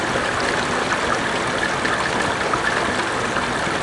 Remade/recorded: recorded